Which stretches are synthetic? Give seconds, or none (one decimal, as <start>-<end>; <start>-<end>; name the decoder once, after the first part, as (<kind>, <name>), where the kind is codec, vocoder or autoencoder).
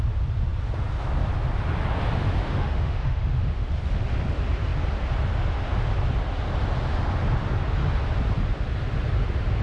2.4-3.7 (autoencoder, DAC-VAE)